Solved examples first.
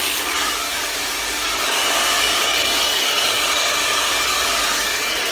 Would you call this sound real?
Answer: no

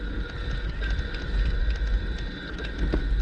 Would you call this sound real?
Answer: yes